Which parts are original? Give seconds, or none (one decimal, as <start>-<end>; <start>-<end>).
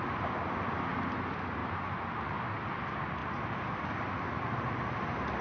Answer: 0.0-1.6; 2.4-3.2; 5.0-5.4